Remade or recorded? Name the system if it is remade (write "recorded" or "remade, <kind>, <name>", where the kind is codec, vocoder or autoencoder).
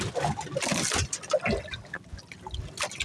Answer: recorded